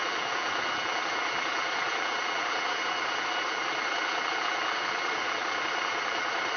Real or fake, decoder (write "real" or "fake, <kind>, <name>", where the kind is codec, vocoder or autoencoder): fake, vocoder, BigVGAN v2